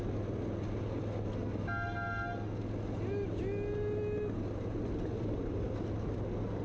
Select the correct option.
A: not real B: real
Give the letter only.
B